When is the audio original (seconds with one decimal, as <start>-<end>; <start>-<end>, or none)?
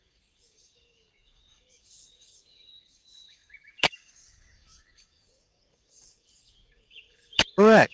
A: none